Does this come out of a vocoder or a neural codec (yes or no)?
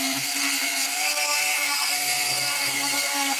yes